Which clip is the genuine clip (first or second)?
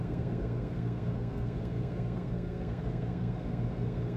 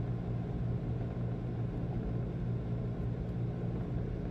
second